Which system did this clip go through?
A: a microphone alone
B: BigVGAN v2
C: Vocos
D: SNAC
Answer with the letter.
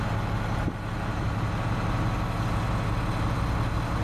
A